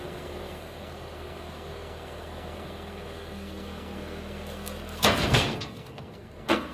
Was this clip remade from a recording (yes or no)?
yes